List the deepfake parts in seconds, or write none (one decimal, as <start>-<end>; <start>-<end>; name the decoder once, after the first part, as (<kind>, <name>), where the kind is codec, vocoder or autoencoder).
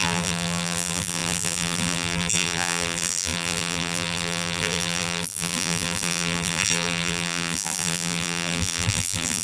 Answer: 0.0-9.4 (vocoder, BigVGAN v2)